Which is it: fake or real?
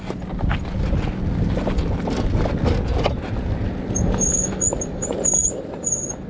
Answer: real